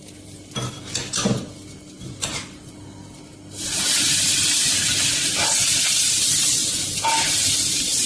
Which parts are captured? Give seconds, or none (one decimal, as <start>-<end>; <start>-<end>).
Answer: 0.0-6.6; 7.1-8.1